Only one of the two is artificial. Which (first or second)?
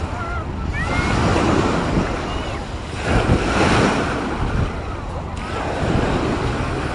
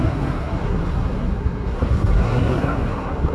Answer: second